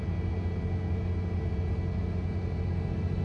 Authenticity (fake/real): real